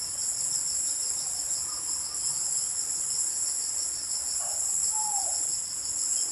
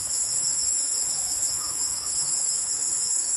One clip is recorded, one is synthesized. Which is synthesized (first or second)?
second